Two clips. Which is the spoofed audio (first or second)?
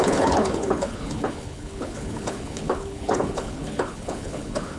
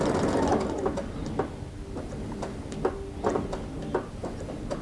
first